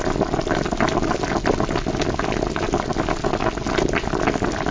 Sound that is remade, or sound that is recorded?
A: recorded